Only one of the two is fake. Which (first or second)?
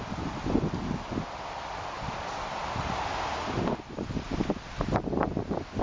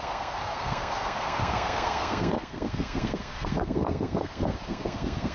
second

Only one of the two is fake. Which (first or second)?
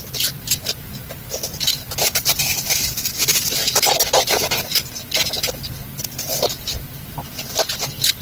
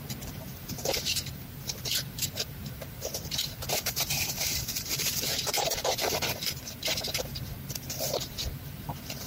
second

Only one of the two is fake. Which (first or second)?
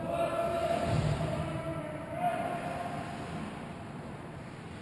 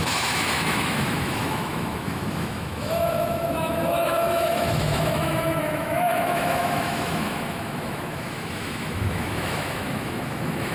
second